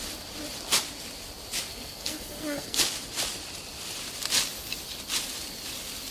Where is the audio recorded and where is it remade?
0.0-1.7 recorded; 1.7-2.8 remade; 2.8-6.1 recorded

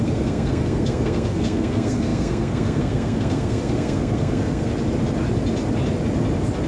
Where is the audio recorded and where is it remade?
0.0-4.7 remade; 4.7-6.7 recorded

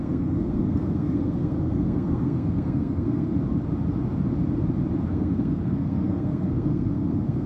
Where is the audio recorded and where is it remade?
0.0-3.3 remade; 3.3-5.1 recorded; 5.1-7.5 remade

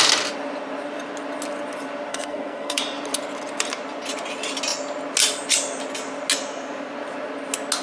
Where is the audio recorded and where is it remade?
0.0-2.1 recorded; 2.1-2.8 remade; 2.8-7.8 recorded